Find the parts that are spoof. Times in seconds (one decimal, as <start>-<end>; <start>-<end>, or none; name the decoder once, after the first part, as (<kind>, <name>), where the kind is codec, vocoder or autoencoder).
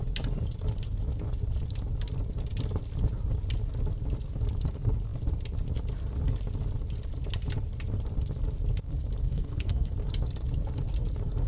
9.3-9.9 (codec, SNAC)